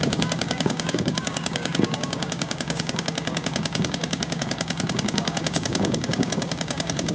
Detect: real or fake fake